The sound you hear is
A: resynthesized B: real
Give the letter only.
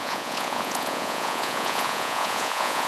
A